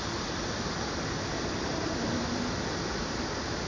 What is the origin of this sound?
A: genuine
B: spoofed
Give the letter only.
A